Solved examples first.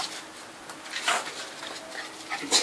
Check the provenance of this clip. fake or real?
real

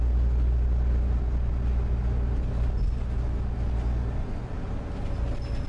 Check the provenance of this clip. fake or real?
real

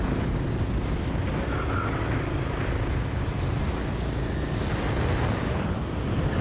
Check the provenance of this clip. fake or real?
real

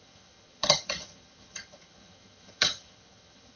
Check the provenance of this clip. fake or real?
fake